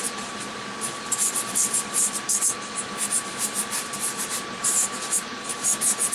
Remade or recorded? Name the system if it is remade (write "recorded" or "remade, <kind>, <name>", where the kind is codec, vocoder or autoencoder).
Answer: remade, vocoder, BigVGAN v2